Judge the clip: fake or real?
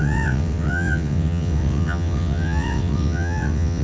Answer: fake